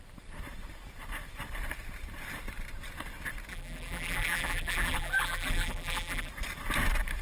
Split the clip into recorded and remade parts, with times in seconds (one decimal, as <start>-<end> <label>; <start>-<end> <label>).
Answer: 0.0-3.5 recorded; 3.5-6.3 remade; 6.3-7.2 recorded